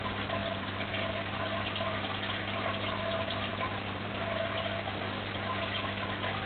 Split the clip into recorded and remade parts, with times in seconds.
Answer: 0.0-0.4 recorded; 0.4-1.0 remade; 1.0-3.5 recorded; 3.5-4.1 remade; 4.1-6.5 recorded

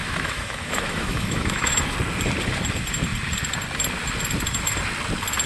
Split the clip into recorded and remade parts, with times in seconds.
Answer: 0.0-1.8 remade; 1.8-5.5 recorded

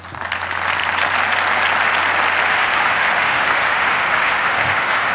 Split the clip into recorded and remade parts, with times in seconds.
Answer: 0.0-2.5 recorded; 2.5-5.1 remade

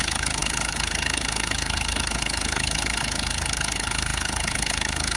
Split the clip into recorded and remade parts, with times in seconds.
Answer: 0.0-5.2 remade

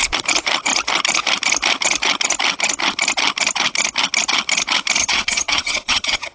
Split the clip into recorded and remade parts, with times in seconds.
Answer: 0.0-5.0 recorded; 5.0-6.3 remade